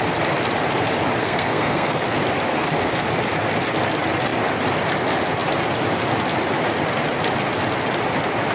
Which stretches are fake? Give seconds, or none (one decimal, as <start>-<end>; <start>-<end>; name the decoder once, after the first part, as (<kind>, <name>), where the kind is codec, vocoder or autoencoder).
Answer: 1.2-2.0 (codec, SNAC); 2.5-3.1